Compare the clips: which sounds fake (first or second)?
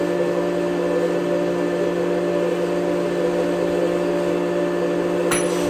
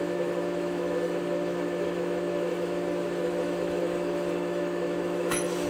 second